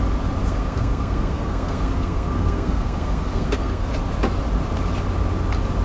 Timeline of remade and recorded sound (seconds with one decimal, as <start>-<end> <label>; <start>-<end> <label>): 0.0-0.4 recorded; 0.4-3.9 remade; 3.9-5.8 recorded